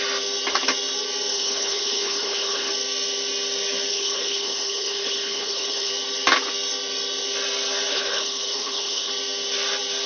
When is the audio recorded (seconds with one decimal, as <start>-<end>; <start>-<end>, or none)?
0.0-1.3; 2.7-3.9; 5.9-7.9; 9.1-10.1